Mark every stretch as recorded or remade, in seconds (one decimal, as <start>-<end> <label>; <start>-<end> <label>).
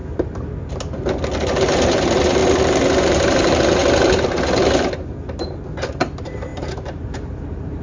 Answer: 0.0-1.4 recorded; 1.4-2.4 remade; 2.4-3.0 recorded; 3.0-3.8 remade; 3.8-6.0 recorded; 6.0-7.8 remade